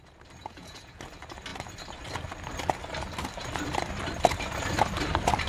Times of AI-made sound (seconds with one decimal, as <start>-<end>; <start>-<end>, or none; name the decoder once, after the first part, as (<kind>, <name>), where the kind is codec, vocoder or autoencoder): 0.4-1.0 (vocoder, Vocos)